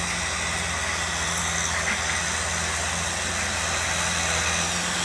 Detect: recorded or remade recorded